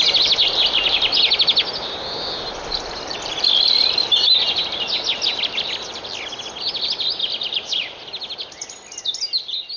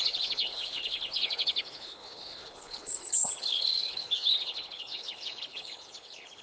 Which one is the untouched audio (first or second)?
first